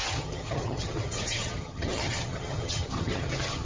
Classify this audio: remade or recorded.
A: remade